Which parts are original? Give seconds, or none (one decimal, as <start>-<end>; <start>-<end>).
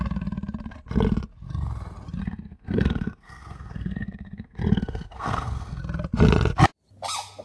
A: 0.0-2.2; 5.8-7.4